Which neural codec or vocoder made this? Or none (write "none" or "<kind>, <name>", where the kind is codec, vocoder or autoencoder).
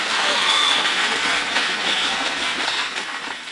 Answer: codec, SNAC